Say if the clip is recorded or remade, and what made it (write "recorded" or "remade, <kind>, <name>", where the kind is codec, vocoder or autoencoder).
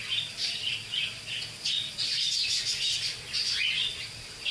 recorded